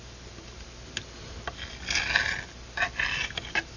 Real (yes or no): yes